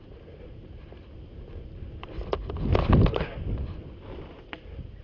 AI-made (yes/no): no